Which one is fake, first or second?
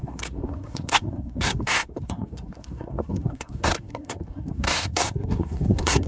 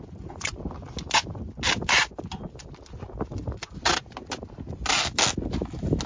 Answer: first